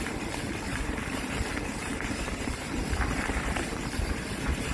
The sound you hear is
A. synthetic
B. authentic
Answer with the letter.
A